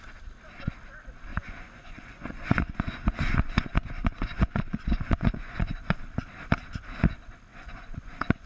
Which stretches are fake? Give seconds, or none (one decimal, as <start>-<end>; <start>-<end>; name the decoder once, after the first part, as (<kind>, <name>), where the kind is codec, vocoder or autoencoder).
1.3-6.0 (vocoder, Vocos); 7.5-8.5